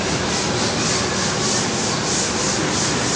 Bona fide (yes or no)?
no